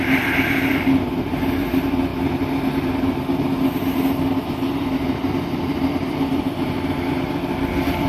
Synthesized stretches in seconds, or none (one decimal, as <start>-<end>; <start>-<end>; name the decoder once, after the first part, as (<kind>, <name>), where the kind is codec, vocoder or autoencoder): 2.1-2.7 (vocoder, BigVGAN v2); 3.5-4.3